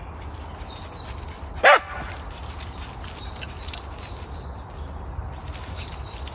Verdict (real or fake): real